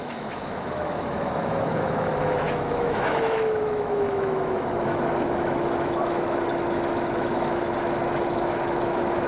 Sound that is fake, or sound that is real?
fake